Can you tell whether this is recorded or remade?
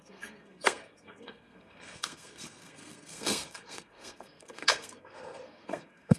remade